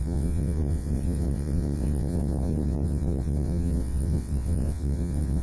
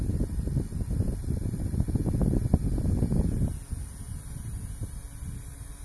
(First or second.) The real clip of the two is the second